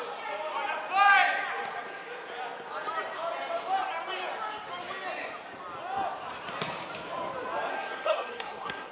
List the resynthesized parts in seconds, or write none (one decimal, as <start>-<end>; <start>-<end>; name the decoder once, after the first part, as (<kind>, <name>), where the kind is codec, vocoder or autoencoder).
7.7-8.9 (codec, SNAC)